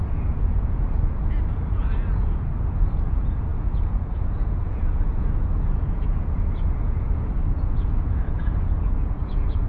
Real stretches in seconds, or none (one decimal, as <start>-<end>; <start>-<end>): none

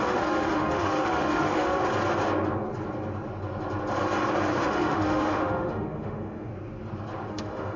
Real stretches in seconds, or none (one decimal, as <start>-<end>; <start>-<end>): 1.8-4.6; 6.5-7.3

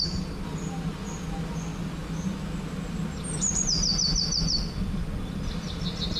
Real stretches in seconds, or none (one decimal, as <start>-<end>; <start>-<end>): 0.0-6.2

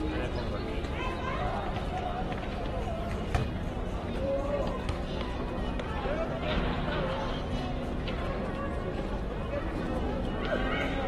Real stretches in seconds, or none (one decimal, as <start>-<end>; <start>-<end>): 0.0-11.1

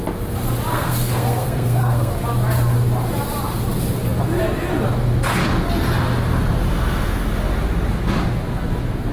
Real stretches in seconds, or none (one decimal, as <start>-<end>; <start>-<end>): 0.0-0.7; 2.1-9.1

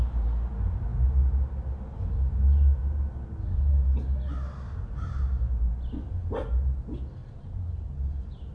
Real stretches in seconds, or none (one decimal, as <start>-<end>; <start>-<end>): 0.0-7.2